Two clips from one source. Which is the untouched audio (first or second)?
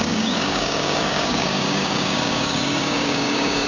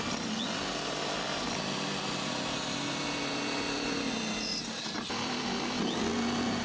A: second